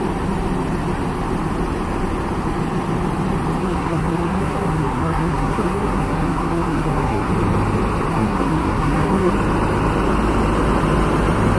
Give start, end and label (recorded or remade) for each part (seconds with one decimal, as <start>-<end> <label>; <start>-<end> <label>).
0.0-3.6 recorded; 3.6-7.3 remade; 7.3-8.1 recorded; 8.1-9.3 remade; 9.3-11.6 recorded

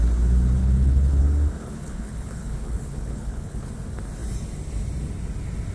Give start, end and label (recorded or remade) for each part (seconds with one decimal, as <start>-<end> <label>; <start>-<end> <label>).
0.0-0.6 recorded; 0.6-1.2 remade; 1.2-1.6 recorded; 1.6-3.7 remade; 3.7-5.7 recorded